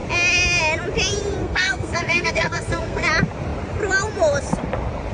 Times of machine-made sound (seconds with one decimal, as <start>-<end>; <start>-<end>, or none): 1.4-3.1